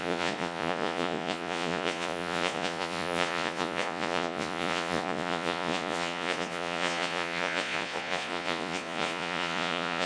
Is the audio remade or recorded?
remade